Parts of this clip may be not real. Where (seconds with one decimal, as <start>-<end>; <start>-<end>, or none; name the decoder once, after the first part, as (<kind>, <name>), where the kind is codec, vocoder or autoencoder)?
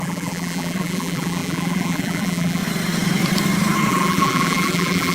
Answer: 0.0-2.6 (vocoder, BigVGAN v2); 3.9-5.1